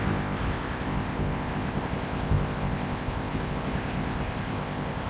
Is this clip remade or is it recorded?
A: remade